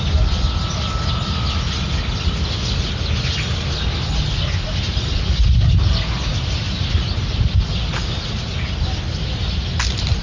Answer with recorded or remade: recorded